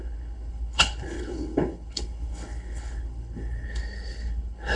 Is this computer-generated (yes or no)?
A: yes